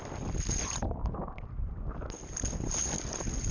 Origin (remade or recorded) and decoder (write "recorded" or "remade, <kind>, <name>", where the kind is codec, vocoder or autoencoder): recorded